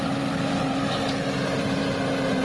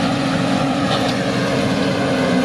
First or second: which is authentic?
first